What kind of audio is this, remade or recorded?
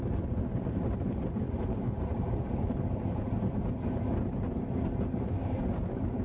recorded